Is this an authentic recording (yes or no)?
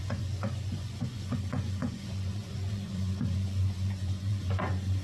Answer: no